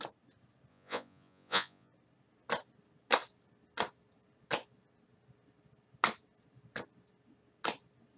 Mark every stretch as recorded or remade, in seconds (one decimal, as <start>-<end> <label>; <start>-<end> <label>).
0.0-0.7 recorded; 0.7-1.9 remade; 1.9-8.2 recorded